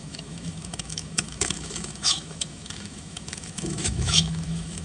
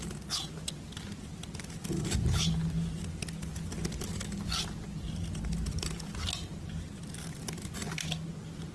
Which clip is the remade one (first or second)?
first